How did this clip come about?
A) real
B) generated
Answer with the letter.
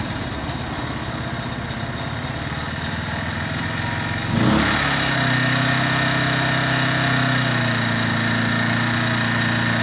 A